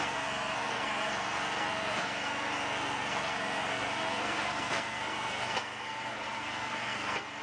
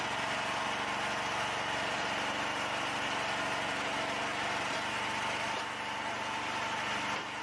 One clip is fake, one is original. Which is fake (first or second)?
first